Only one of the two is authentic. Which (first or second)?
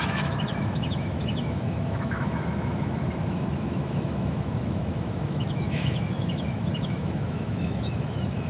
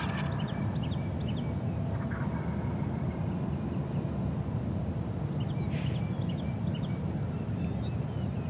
second